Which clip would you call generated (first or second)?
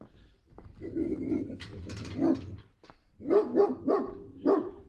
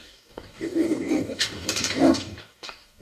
second